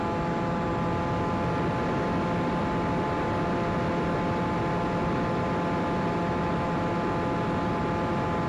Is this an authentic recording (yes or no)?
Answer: yes